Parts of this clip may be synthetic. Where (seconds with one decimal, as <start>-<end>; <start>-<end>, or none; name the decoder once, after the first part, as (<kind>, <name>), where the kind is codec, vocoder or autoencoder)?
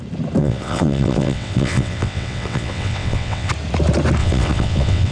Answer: 0.4-3.5 (vocoder, WaveNeXt); 4.2-5.1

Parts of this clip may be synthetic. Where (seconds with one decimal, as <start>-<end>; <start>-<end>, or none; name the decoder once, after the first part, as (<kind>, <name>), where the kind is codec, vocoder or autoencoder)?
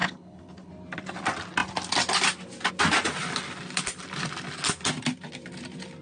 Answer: 0.0-0.7 (codec, HILCodec)